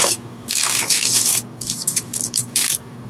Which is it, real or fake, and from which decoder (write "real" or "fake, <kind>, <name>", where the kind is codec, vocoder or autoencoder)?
fake, codec, DAC